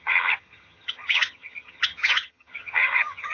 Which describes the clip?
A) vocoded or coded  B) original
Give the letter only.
A